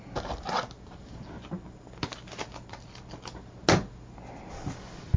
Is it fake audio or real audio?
real